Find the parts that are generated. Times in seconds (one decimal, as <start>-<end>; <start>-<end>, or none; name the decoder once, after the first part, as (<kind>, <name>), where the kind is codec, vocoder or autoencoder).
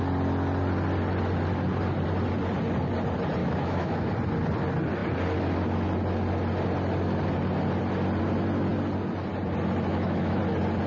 3.4-4.1 (autoencoder, DAC-VAE); 9.9-10.4